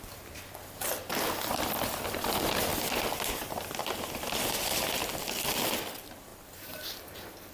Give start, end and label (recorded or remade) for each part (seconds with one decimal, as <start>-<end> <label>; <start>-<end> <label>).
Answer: 0.0-7.5 recorded